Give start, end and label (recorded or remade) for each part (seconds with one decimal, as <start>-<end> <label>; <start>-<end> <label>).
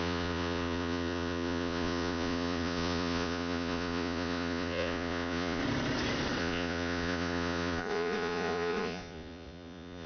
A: 0.0-5.6 remade; 5.6-6.4 recorded; 6.4-10.1 remade